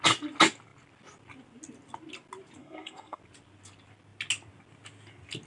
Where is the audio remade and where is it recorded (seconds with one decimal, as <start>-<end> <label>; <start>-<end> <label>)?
0.0-2.6 recorded; 2.6-3.2 remade; 3.2-5.5 recorded